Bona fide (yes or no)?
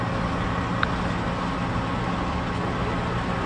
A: yes